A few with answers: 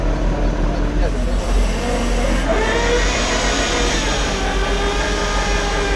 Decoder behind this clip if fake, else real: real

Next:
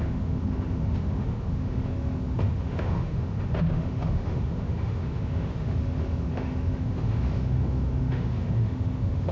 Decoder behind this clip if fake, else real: fake, autoencoder, DAC-VAE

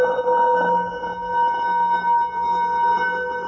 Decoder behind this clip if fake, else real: real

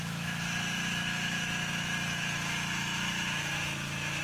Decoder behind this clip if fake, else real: fake, autoencoder, DAC-VAE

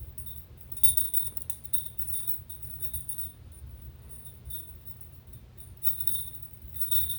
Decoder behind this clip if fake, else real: real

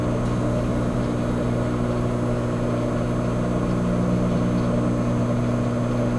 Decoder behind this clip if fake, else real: real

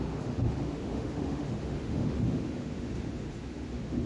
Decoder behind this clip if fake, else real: fake, autoencoder, DAC-VAE